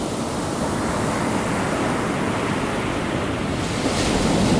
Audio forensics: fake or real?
real